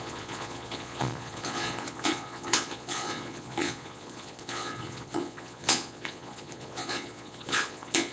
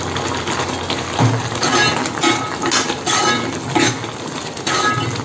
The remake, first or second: first